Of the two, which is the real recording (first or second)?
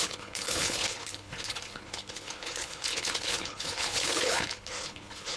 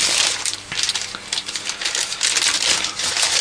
second